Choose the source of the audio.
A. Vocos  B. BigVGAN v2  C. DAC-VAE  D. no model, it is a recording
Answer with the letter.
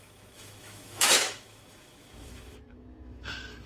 C